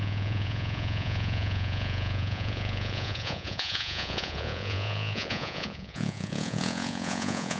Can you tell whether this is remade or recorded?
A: remade